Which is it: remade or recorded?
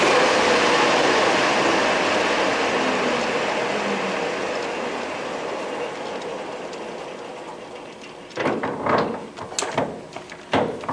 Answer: recorded